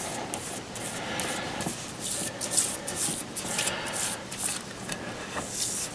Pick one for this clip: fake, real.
real